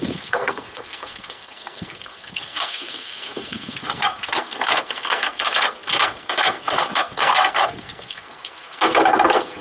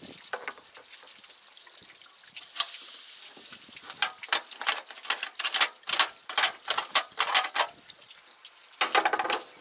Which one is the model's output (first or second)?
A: first